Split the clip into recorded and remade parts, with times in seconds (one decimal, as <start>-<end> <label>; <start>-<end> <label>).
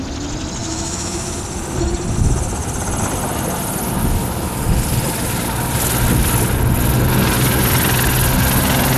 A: 0.0-0.6 recorded; 0.6-1.4 remade; 1.4-9.0 recorded